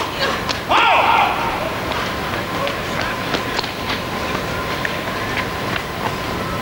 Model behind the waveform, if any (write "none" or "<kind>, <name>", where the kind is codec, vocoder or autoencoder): none